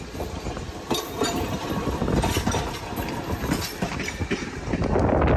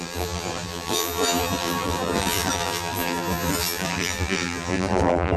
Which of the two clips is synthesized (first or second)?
second